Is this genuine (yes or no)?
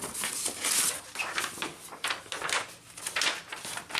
yes